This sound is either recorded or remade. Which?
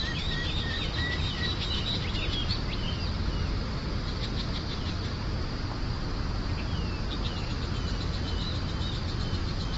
recorded